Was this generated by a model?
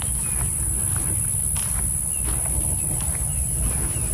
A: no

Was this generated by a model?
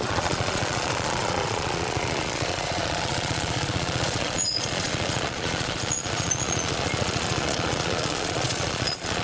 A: yes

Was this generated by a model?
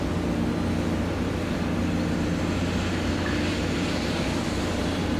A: no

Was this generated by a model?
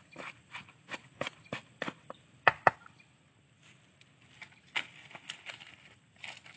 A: yes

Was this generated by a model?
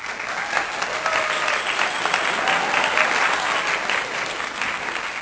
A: no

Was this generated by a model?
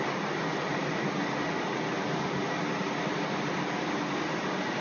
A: no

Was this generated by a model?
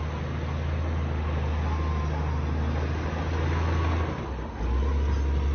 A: no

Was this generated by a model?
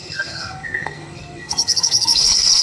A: yes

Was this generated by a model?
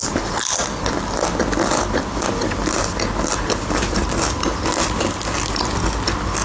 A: no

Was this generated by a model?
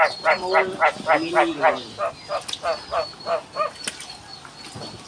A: no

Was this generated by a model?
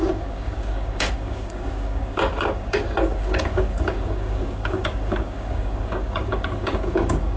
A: yes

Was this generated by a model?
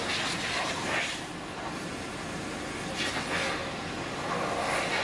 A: no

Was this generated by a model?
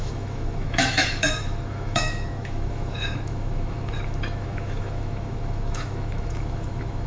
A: yes